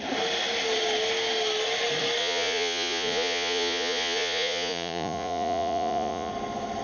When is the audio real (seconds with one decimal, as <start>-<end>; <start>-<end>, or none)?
0.0-2.2; 6.3-6.8